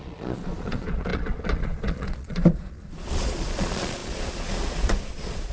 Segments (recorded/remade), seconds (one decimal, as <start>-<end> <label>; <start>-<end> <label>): 0.0-5.5 remade